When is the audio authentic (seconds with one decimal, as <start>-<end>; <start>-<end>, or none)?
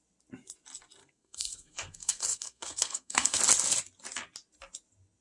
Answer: 0.0-1.0; 3.4-5.2